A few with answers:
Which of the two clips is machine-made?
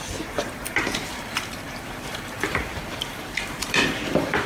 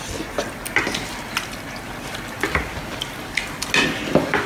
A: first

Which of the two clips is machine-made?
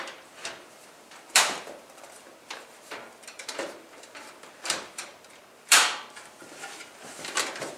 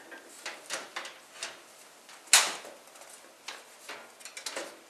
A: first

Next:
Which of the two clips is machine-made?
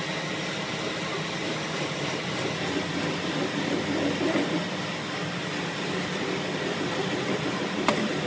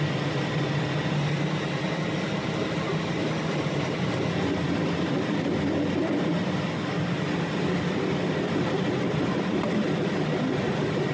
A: second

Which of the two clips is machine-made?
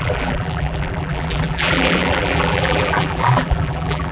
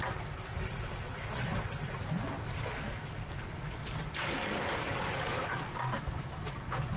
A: first